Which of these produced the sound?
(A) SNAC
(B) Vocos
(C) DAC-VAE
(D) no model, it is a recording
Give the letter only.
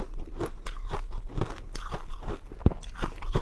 D